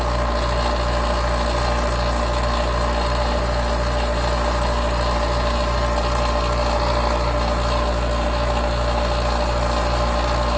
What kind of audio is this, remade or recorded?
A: recorded